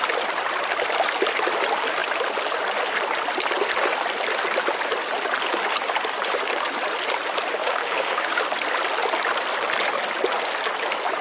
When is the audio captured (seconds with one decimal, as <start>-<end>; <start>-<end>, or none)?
0.0-7.6; 8.4-11.2